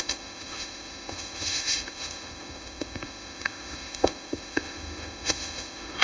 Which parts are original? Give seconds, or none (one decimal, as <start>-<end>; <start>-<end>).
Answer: none